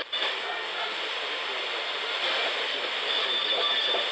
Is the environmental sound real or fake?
real